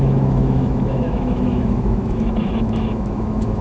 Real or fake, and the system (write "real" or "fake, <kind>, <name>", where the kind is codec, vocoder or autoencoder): fake, autoencoder, DAC-VAE